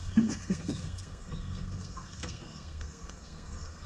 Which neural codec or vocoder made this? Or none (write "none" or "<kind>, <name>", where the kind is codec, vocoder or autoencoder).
codec, SNAC